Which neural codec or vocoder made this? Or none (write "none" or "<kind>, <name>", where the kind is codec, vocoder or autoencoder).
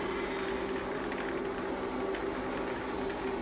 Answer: none